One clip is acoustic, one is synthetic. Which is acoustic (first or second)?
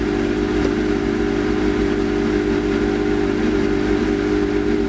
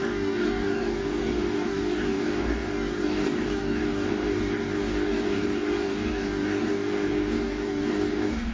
first